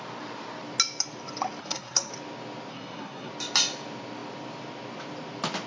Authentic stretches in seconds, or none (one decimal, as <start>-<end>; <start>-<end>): 0.0-1.6; 2.1-2.7; 3.3-5.7